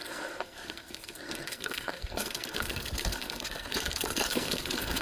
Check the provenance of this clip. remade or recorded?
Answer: remade